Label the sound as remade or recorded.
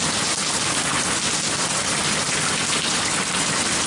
recorded